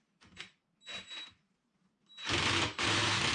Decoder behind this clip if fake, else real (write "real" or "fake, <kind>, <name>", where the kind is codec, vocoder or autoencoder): real